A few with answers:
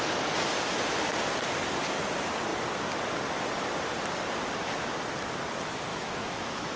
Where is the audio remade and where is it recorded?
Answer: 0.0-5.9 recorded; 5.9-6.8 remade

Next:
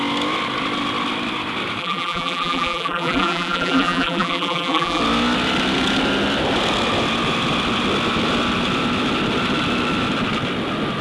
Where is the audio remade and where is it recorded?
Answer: 0.0-1.8 recorded; 1.8-5.0 remade; 5.0-11.0 recorded